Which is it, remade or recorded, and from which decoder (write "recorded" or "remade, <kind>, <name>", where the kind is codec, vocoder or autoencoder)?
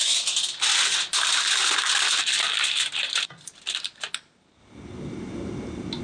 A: recorded